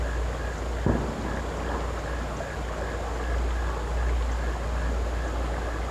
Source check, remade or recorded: recorded